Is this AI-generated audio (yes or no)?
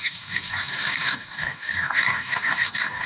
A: yes